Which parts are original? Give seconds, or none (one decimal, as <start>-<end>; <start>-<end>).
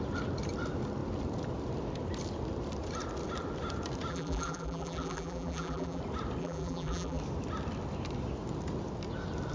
0.0-4.1; 6.0-6.4; 7.2-9.5